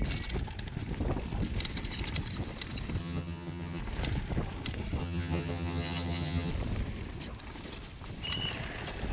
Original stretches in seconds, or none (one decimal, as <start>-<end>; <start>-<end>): 0.0-3.0; 3.8-5.0; 6.5-9.1